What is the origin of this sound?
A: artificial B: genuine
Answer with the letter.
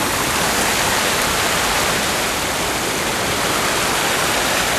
B